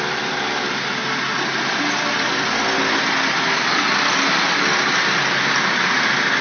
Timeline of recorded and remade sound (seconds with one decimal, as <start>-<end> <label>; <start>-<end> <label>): 0.0-6.4 recorded